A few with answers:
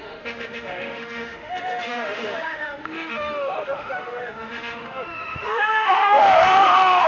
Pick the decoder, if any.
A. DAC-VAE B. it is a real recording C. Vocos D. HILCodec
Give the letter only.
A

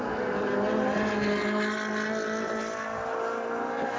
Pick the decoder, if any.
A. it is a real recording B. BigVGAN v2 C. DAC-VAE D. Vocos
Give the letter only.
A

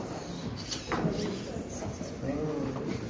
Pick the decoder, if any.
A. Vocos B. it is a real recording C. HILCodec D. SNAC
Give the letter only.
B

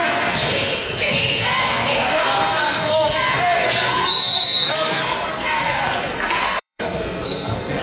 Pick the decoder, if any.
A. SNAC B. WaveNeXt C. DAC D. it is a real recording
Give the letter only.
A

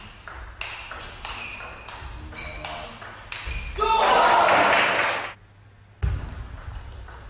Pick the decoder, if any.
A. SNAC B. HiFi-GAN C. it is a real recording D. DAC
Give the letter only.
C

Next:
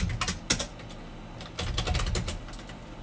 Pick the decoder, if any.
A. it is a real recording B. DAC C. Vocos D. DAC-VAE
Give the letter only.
A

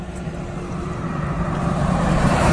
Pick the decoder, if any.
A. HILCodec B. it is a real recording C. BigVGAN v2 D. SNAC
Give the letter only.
C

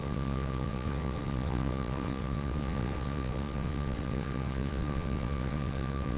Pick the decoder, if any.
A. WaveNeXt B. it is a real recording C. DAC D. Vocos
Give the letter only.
A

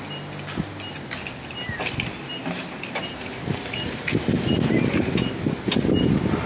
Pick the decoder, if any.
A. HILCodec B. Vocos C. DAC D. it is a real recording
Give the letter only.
D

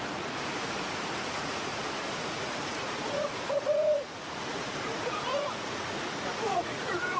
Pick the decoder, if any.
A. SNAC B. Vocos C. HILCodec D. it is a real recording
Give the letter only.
B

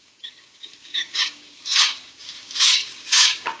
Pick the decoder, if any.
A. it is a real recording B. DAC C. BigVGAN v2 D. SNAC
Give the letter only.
B